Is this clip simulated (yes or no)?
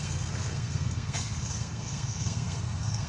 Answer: yes